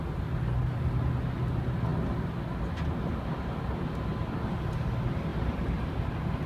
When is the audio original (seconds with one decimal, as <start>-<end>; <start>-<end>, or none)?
0.0-5.3; 6.1-6.5